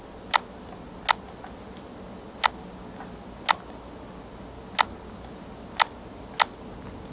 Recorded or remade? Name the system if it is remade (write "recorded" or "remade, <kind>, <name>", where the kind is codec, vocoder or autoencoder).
recorded